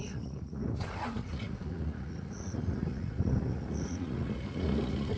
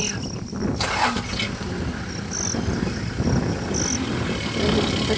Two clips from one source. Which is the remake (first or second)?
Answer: first